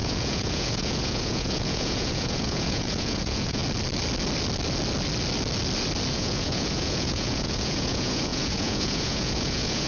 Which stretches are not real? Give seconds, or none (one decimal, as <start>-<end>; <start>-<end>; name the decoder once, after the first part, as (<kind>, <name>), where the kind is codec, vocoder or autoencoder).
0.0-3.6 (vocoder, Vocos); 6.1-9.9